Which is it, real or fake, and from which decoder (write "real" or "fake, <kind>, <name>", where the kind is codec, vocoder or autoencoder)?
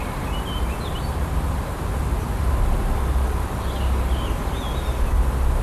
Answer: real